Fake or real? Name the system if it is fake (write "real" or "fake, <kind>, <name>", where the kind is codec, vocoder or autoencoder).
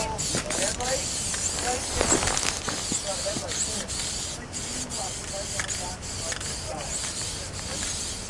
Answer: real